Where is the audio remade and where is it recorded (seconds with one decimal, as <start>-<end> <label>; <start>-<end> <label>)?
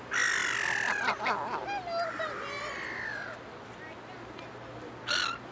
0.0-5.5 recorded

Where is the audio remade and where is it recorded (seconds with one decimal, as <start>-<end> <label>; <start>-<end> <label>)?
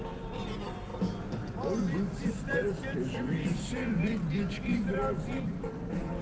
0.0-6.2 remade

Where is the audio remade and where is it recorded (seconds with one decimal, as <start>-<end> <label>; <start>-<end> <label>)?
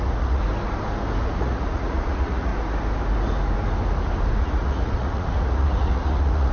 0.0-0.4 remade; 0.4-1.2 recorded; 1.2-2.5 remade; 2.5-4.4 recorded; 4.4-6.5 remade